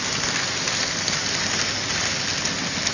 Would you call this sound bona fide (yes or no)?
yes